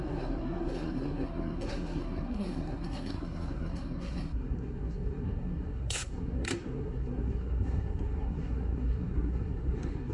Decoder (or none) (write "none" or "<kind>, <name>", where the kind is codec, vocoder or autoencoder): codec, SNAC